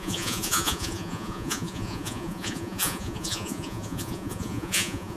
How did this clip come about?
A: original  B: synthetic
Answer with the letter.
B